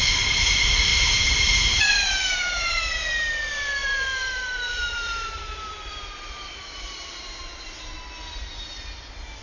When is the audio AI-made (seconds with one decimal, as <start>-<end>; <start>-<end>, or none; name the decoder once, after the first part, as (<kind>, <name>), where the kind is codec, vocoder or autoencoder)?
0.9-2.8 (vocoder, BigVGAN v2); 3.8-7.9